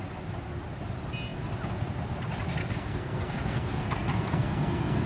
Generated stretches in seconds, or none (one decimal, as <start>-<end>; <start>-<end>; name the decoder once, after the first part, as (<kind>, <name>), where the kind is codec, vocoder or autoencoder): 2.6-5.1 (codec, SNAC)